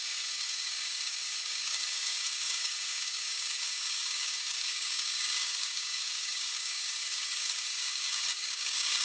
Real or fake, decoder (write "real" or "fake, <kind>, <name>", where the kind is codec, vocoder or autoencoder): fake, codec, DAC